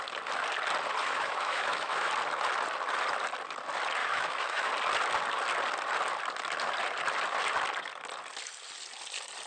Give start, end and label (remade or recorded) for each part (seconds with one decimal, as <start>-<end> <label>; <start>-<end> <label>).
0.0-1.0 recorded; 1.0-2.1 remade; 2.1-4.0 recorded; 4.0-4.7 remade; 4.7-9.5 recorded